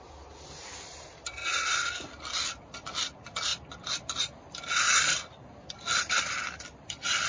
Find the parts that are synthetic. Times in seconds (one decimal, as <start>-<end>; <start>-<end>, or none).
none